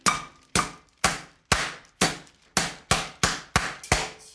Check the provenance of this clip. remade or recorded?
recorded